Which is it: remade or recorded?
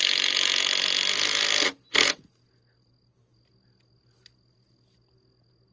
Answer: recorded